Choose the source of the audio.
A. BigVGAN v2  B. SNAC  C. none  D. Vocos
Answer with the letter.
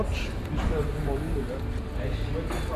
C